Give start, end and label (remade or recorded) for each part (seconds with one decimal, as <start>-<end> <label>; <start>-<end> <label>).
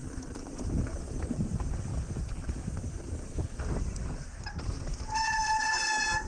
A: 0.0-1.3 recorded; 1.3-1.9 remade; 1.9-5.7 recorded; 5.7-6.3 remade